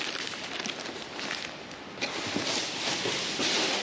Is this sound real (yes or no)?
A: yes